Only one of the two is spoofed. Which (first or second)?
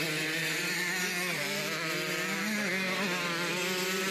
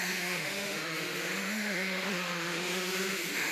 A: second